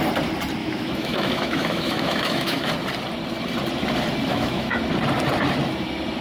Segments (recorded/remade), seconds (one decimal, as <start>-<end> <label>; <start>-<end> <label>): 0.0-0.6 recorded; 0.6-2.7 remade; 2.7-4.3 recorded; 4.3-4.8 remade; 4.8-6.2 recorded